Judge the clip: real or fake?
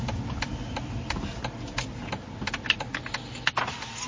real